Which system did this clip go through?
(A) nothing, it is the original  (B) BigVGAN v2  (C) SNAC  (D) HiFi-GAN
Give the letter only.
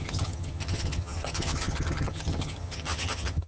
D